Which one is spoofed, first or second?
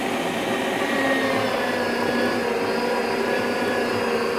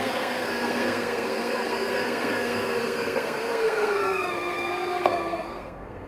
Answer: second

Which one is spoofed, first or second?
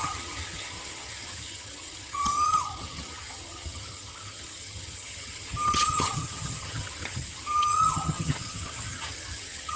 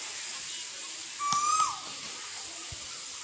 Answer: first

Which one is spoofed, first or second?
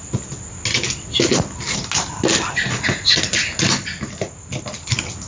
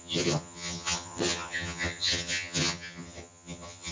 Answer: second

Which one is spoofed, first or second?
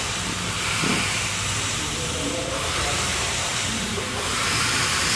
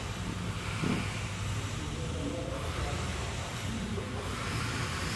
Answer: first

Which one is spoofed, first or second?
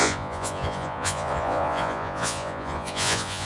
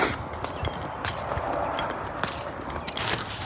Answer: first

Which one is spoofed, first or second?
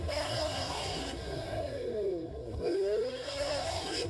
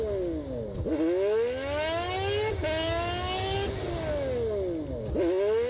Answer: first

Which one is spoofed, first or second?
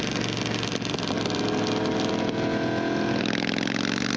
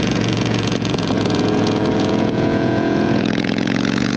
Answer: second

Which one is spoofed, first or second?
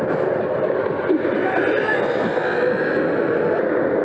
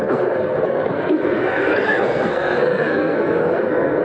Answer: second